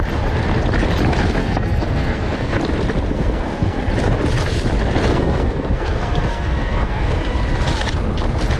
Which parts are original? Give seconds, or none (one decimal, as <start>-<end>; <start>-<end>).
0.0-1.4; 2.6-3.1; 3.8-5.1; 7.2-8.6